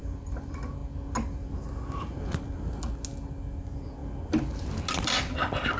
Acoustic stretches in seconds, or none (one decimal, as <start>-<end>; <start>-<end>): 0.0-5.8